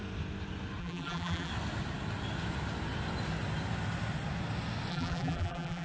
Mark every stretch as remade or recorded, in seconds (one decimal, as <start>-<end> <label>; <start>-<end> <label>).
0.0-0.8 recorded; 0.8-1.5 remade; 1.5-4.9 recorded; 4.9-5.8 remade